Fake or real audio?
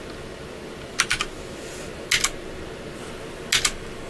real